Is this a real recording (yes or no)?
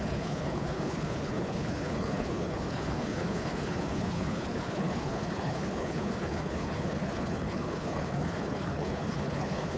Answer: no